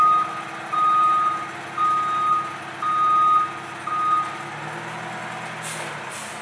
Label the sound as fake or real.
real